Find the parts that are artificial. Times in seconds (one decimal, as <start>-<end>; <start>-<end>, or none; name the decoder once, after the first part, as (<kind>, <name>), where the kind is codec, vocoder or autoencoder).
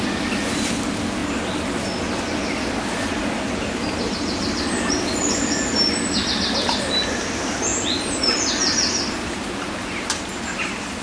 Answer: none